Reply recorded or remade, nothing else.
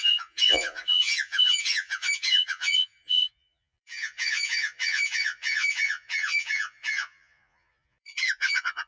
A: remade